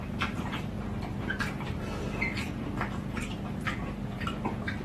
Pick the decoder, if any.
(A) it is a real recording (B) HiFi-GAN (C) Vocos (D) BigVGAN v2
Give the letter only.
A